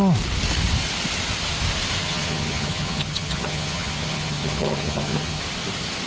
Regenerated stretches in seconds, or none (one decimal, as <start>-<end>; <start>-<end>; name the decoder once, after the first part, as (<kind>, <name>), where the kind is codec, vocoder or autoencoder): 2.0-5.4 (vocoder, HiFi-GAN)